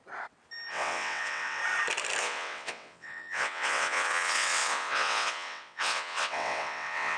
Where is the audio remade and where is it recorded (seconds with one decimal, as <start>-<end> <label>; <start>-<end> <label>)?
0.0-0.7 recorded; 0.7-1.6 remade; 1.6-2.2 recorded; 2.2-7.2 remade